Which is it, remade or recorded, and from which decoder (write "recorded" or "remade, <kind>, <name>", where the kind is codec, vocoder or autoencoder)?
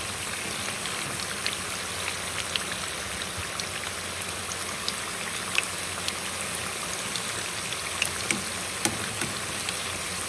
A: recorded